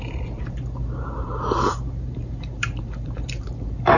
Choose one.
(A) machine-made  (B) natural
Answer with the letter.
A